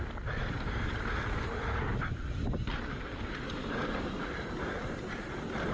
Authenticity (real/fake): fake